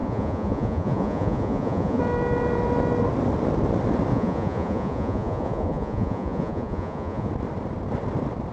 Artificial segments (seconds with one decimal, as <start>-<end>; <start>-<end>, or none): 0.0-2.0; 4.1-7.3